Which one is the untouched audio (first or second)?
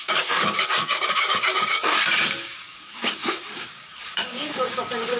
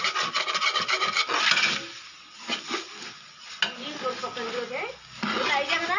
second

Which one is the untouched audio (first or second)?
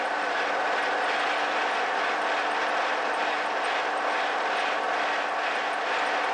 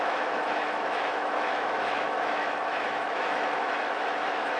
first